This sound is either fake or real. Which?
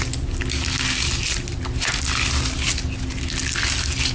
real